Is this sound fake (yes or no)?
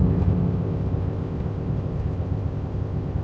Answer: yes